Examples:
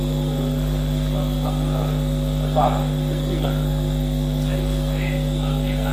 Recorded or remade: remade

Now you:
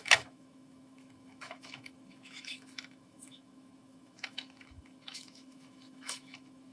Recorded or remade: remade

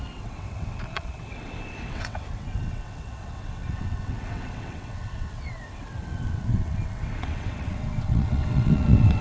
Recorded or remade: remade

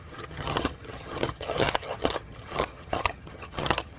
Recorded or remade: remade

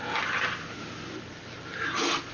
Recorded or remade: recorded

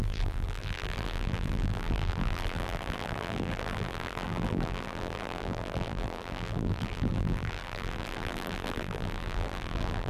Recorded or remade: remade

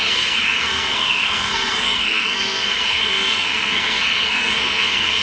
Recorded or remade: remade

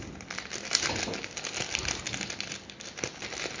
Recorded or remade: recorded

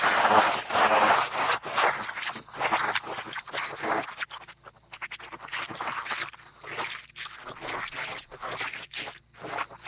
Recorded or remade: recorded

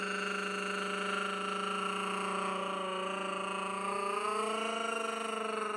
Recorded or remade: recorded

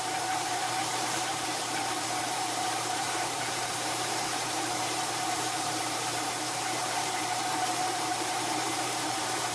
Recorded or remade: remade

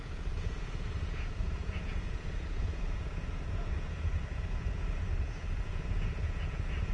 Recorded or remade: remade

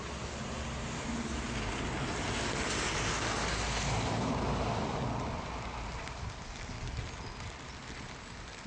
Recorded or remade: recorded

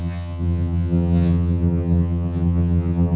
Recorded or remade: remade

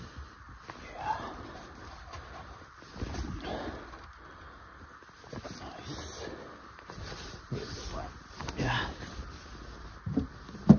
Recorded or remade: recorded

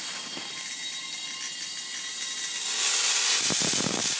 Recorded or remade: recorded